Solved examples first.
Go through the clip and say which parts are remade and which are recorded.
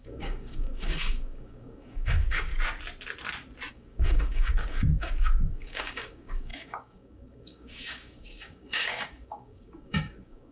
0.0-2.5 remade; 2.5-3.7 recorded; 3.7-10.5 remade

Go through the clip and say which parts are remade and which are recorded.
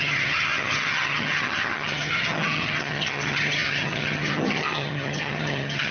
0.0-5.9 remade